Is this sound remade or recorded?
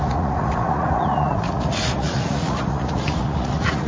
remade